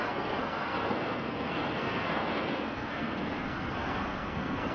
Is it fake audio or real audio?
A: fake